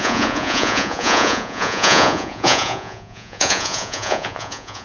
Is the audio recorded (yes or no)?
no